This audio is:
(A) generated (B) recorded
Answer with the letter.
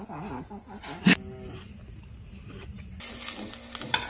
B